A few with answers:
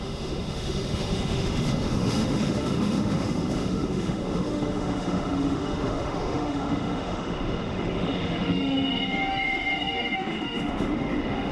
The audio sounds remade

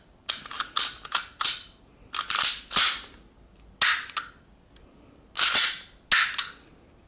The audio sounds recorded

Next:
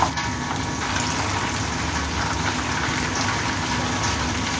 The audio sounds recorded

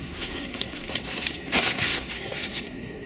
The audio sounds remade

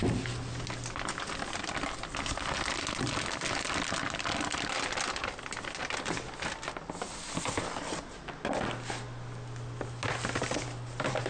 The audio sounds recorded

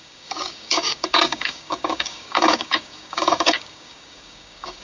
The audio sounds remade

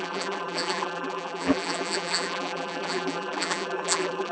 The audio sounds remade